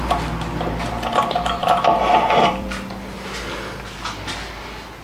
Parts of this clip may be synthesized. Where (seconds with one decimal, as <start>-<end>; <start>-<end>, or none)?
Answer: 1.6-4.6